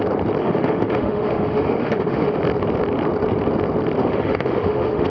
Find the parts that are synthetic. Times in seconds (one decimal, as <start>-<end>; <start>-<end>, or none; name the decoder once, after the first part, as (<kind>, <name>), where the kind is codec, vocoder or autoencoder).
0.4-2.4 (autoencoder, DAC-VAE); 4.0-5.1